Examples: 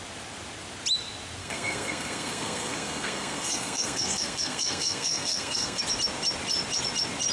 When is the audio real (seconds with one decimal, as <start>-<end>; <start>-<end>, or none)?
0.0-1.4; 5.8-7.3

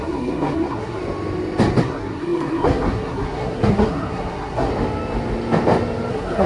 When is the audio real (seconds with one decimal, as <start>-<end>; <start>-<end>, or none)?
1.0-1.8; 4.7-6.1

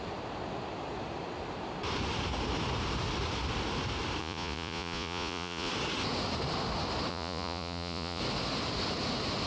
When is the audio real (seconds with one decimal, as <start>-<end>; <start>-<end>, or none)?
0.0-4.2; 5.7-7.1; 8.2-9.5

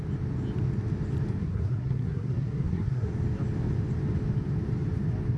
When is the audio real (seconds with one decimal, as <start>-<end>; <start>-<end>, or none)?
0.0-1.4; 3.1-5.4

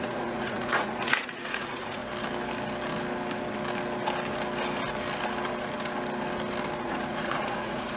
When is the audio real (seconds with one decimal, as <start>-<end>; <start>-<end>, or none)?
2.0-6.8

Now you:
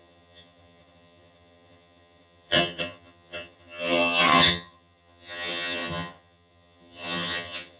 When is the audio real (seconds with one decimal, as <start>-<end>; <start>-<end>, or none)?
none

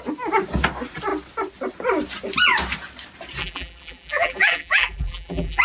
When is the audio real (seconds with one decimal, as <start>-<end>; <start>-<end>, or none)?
0.0-3.4